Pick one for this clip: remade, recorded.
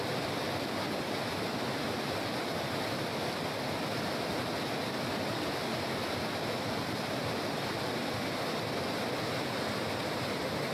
recorded